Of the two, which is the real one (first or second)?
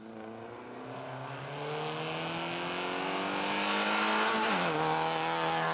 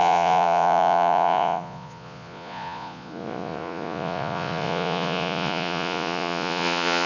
first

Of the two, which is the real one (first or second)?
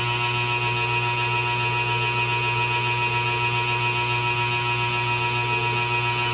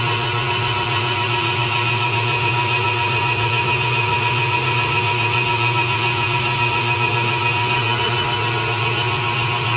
first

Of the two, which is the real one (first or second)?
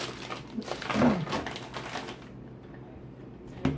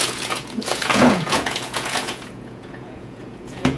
first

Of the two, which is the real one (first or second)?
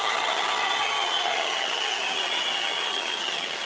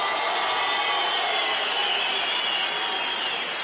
second